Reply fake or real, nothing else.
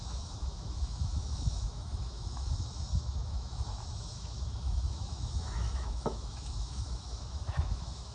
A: fake